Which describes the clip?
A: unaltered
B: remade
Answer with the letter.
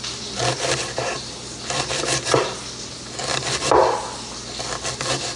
A